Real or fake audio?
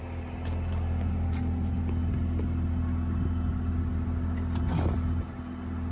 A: real